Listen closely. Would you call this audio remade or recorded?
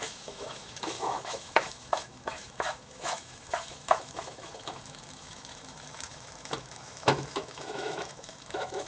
remade